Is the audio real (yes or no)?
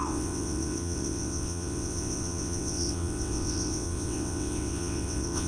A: no